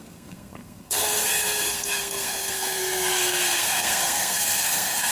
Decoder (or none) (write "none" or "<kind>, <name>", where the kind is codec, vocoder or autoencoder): codec, SNAC